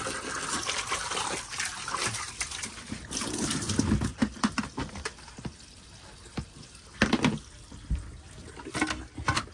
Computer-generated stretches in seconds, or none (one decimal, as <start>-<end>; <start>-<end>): none